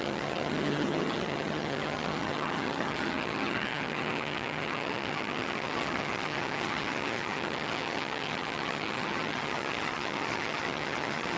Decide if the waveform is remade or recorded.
remade